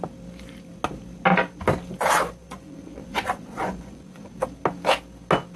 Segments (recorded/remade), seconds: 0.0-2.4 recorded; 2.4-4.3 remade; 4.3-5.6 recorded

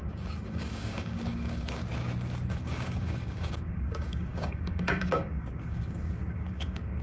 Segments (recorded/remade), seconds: 0.0-1.8 remade; 1.8-2.5 recorded; 2.5-7.0 remade